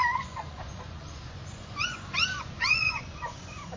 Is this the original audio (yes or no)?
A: no